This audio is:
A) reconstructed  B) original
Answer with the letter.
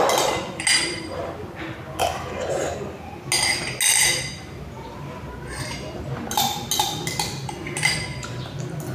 B